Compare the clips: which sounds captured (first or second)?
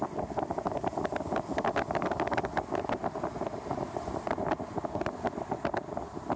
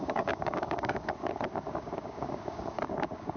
first